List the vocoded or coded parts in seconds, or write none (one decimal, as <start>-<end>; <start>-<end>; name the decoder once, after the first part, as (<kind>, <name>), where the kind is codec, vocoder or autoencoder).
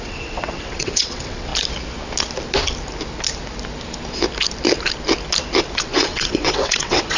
0.0-1.5 (vocoder, WaveNeXt); 5.8-7.2